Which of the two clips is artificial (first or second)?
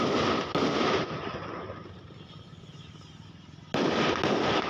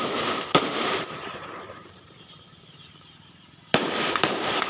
second